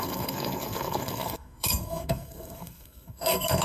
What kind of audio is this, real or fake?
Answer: fake